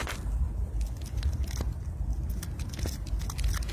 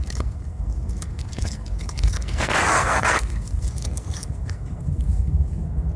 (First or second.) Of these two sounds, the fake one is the second